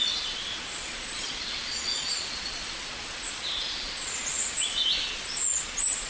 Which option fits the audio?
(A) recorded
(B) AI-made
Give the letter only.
B